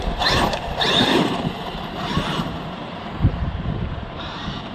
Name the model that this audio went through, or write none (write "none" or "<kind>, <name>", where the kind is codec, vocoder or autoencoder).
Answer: vocoder, BigVGAN v2